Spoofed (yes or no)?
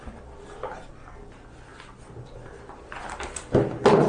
no